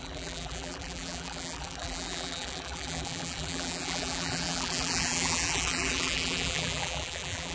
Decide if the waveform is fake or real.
fake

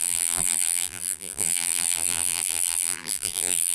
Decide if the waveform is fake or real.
fake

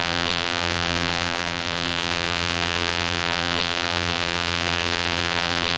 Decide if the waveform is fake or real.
fake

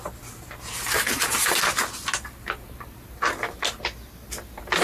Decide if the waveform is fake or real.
real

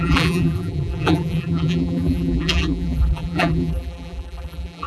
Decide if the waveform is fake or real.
fake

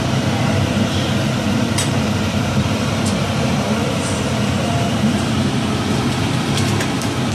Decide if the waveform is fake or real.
fake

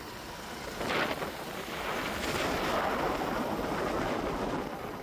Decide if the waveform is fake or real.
real